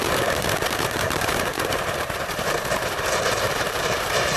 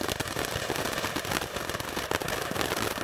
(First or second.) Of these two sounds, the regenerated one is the first